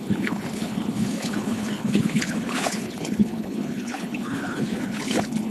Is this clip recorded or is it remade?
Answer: remade